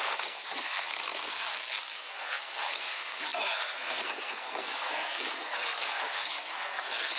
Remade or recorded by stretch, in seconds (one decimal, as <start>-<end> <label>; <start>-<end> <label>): 0.0-7.2 remade